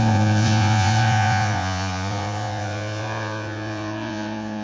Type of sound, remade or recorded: remade